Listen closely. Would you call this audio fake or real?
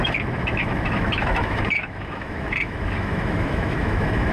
fake